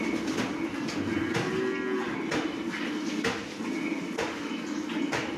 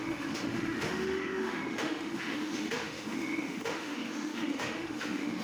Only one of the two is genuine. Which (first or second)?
first